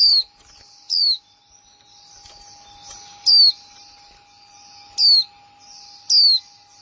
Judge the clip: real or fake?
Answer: real